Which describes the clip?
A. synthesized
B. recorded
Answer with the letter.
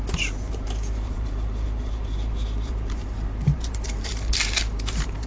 A